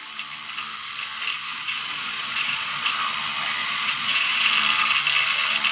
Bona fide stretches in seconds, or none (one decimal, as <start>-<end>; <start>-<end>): 0.0-1.5; 2.9-3.6; 4.5-5.7